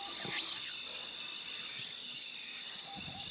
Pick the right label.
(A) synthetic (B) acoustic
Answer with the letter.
B